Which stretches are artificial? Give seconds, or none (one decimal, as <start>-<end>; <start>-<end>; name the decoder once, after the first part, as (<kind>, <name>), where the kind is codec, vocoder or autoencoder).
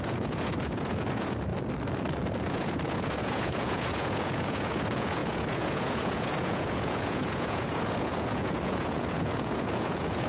0.0-1.5 (vocoder, Vocos); 2.4-10.3